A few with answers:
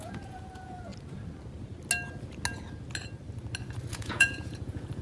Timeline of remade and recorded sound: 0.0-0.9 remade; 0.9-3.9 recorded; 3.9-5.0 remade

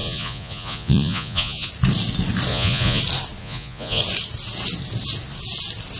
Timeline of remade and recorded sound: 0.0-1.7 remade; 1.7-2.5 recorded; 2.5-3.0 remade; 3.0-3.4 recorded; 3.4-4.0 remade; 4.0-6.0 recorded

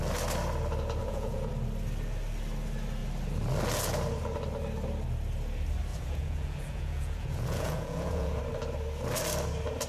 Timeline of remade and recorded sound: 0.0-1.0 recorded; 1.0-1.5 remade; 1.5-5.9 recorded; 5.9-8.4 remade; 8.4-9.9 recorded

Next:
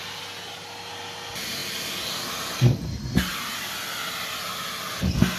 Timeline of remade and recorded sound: 0.0-5.4 recorded

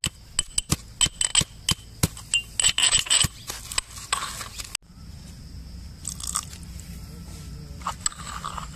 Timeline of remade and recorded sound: 0.0-8.8 recorded

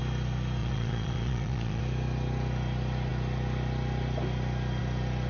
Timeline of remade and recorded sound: 0.0-0.6 recorded; 0.6-1.8 remade; 1.8-5.3 recorded

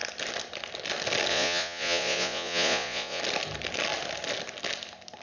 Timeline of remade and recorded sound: 0.0-1.3 recorded; 1.3-3.2 remade; 3.2-5.2 recorded